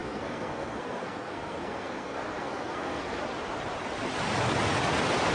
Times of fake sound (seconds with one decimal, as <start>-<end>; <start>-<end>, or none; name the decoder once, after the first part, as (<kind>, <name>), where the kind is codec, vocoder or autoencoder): 0.0-3.2 (codec, SNAC)